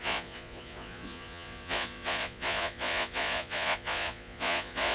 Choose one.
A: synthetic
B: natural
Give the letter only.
A